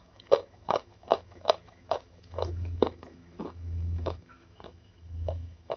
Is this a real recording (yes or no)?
no